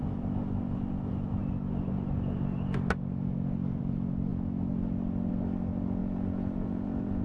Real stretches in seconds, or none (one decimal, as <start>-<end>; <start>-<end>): 0.0-6.0